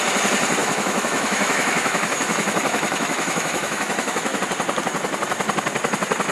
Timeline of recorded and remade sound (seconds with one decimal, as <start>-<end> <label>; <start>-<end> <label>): 0.0-0.6 recorded; 0.6-4.4 remade; 4.4-6.3 recorded